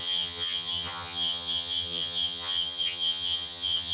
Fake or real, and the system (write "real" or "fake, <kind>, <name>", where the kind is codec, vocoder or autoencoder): fake, vocoder, HiFi-GAN